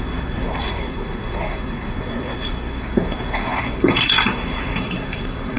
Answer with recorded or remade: remade